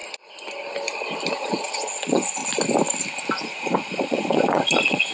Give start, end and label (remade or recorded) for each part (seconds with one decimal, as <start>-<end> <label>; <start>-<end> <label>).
0.0-1.3 recorded; 1.3-2.4 remade; 2.4-3.4 recorded; 3.4-5.1 remade